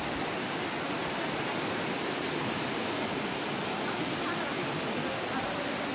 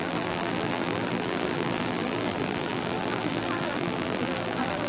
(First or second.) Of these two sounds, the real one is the first